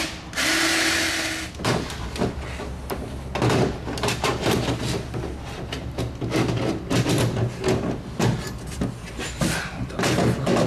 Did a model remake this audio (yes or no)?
no